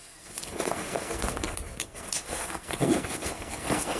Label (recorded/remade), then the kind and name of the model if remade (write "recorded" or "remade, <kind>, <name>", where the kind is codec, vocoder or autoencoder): remade, codec, SNAC